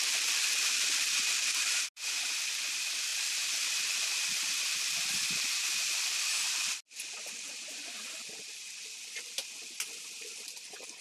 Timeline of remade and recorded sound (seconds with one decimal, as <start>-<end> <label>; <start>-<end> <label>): 0.0-11.0 recorded